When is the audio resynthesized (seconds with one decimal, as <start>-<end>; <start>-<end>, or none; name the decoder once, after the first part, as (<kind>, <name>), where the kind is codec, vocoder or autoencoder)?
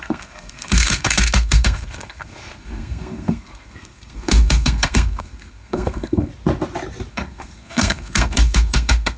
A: 0.0-6.3 (codec, SNAC); 7.1-9.2